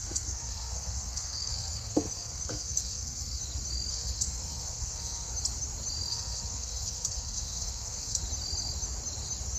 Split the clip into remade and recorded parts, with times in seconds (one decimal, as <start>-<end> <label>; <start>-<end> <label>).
0.0-3.4 remade; 3.4-3.9 recorded; 3.9-5.3 remade; 5.3-6.1 recorded; 6.1-8.2 remade; 8.2-9.6 recorded